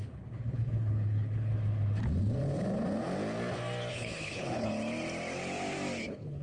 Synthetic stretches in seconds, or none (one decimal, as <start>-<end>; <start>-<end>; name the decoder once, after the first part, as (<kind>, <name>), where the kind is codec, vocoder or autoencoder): 0.0-1.5 (codec, HILCodec); 3.9-4.7; 6.0-6.4